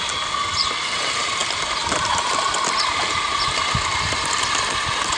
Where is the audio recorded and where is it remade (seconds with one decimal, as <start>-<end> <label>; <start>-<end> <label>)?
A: 0.0-1.4 recorded; 1.4-2.3 remade; 2.3-5.2 recorded